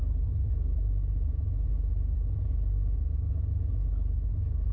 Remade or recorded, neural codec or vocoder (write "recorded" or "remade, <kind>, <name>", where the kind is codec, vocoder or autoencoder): recorded